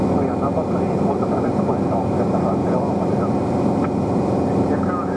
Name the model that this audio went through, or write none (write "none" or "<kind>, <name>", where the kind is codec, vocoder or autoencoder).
none